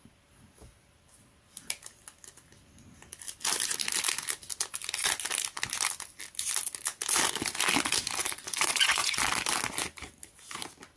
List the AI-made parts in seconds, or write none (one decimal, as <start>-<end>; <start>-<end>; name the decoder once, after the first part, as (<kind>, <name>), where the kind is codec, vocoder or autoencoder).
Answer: 8.2-9.2 (vocoder, Vocos)